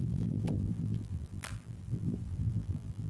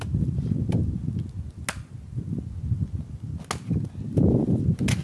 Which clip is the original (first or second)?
second